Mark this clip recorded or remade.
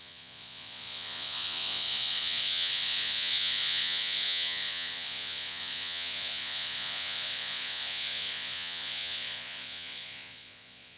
remade